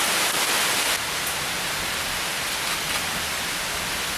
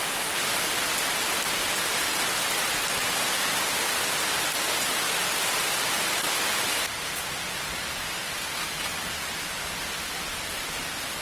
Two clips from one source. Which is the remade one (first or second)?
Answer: second